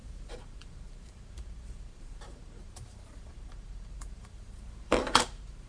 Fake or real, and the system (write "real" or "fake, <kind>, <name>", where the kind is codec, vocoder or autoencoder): fake, vocoder, BigVGAN v2